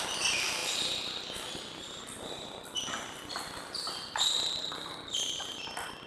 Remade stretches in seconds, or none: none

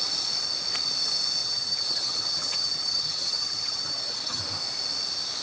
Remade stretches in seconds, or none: 1.4-4.4 (vocoder, HiFi-GAN)

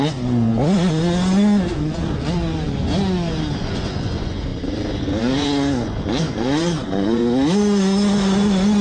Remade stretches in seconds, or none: 0.0-0.5 (vocoder, Vocos); 1.7-2.8; 3.6-4.5; 5.2-7.2

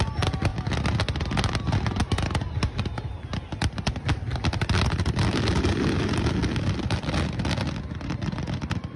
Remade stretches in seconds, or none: none